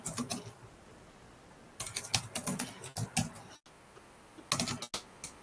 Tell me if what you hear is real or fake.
real